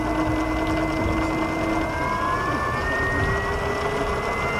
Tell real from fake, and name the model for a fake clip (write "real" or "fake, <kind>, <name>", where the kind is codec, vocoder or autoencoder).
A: real